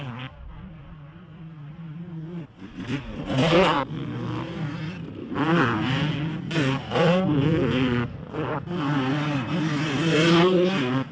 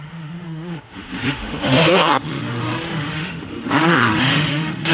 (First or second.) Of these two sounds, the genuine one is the first